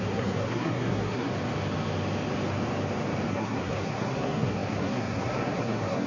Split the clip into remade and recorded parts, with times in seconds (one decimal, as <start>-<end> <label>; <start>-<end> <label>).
0.0-1.3 remade; 1.3-3.3 recorded; 3.3-6.1 remade